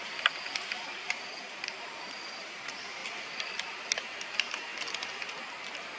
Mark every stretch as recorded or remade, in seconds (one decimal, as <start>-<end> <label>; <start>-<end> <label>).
0.0-3.0 remade; 3.0-4.0 recorded; 4.0-4.7 remade; 4.7-5.5 recorded; 5.5-6.0 remade